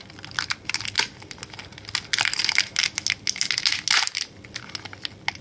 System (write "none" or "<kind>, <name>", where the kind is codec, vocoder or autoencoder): none